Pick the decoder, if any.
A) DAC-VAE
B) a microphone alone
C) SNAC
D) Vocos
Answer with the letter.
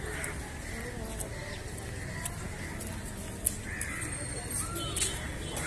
B